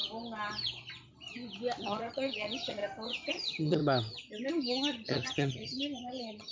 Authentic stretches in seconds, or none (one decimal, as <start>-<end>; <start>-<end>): 0.0-1.8; 2.8-3.3; 3.8-4.5